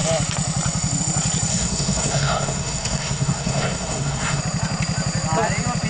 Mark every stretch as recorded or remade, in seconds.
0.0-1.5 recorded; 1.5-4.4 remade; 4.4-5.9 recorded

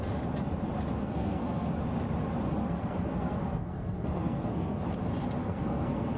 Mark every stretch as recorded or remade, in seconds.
0.0-1.0 recorded; 1.0-1.7 remade; 1.7-2.6 recorded; 2.6-4.8 remade; 4.8-5.4 recorded; 5.4-6.2 remade

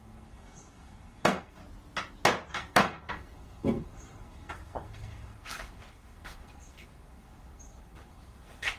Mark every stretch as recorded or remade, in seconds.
0.0-1.6 remade; 1.6-2.5 recorded; 2.5-8.8 remade

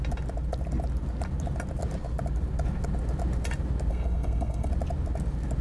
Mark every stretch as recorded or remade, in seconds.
0.0-3.9 recorded; 3.9-4.7 remade; 4.7-5.6 recorded

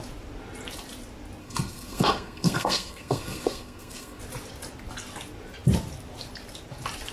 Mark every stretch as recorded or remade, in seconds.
0.0-1.4 recorded; 1.4-4.2 remade; 4.2-7.1 recorded

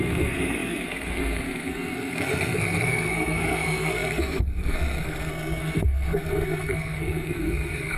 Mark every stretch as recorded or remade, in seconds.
0.0-8.0 remade

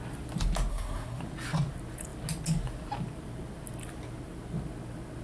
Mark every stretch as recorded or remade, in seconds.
0.0-0.7 recorded; 0.7-1.2 remade; 1.2-5.2 recorded